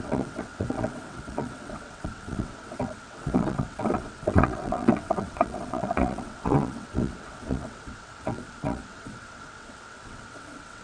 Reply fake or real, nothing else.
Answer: fake